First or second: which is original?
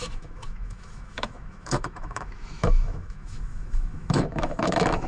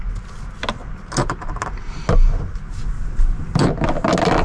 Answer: second